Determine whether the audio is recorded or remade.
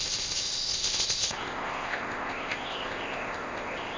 remade